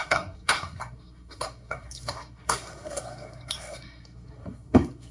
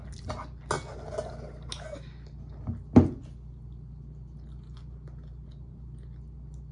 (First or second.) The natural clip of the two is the second